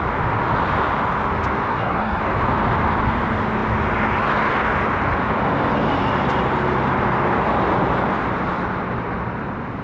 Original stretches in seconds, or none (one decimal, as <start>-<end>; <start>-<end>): 0.0-1.7; 2.2-9.8